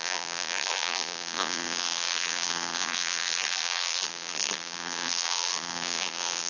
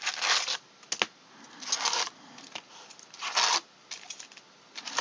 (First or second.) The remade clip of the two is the first